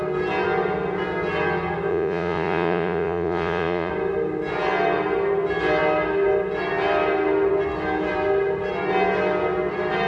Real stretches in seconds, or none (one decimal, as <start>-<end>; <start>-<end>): 0.0-1.9; 3.9-10.1